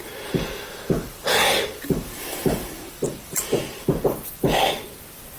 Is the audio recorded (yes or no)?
no